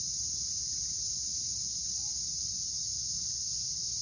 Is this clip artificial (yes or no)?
no